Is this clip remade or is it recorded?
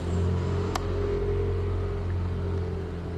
recorded